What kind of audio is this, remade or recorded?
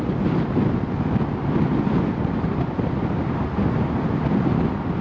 recorded